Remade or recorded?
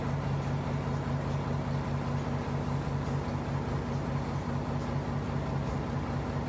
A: recorded